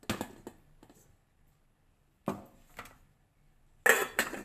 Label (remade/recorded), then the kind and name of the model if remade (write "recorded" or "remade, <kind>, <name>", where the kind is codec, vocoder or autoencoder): recorded